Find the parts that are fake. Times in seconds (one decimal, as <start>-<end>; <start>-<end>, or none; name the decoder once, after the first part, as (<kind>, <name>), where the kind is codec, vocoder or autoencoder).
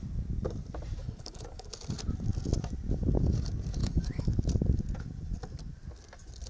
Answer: 1.0-1.7 (codec, DAC); 3.8-4.3